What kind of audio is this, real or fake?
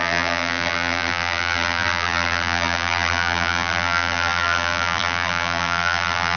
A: fake